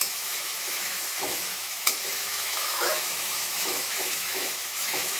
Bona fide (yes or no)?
no